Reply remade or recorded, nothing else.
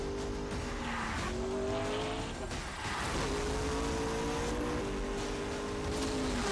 recorded